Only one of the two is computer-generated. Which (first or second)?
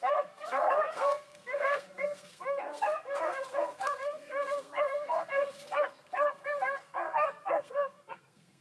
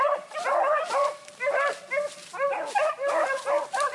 first